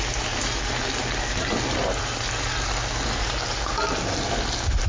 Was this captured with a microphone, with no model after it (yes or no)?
yes